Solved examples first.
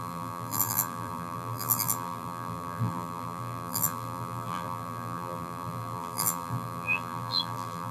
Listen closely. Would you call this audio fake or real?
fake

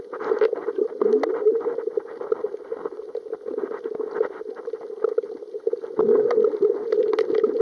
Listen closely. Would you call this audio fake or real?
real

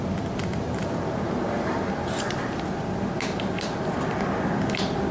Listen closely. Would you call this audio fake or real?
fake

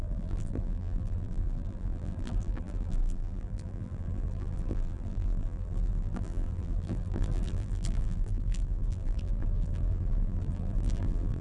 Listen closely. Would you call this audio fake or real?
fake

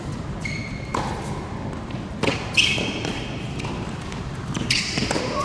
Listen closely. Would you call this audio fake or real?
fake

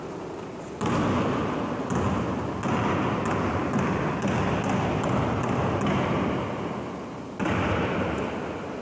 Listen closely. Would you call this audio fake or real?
real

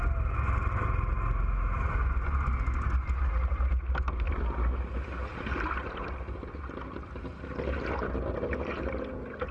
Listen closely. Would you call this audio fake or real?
real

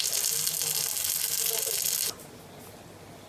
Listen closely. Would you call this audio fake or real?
real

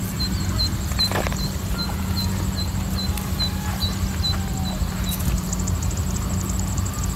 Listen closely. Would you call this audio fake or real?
real